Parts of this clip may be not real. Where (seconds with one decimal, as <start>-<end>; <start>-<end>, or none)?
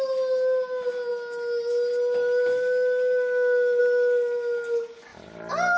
none